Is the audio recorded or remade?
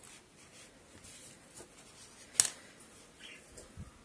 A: recorded